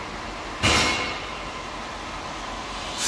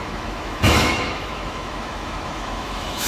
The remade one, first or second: second